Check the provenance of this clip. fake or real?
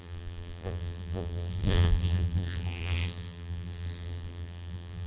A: fake